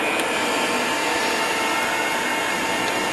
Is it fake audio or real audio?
real